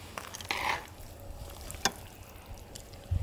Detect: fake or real real